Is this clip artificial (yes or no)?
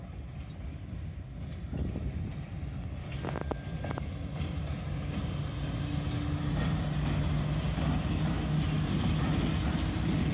no